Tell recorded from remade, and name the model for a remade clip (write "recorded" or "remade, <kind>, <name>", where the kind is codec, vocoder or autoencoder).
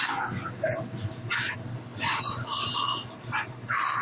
recorded